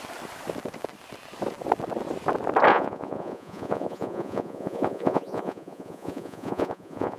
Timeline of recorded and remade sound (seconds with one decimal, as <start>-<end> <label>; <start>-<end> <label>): 0.0-2.7 recorded; 2.7-7.2 remade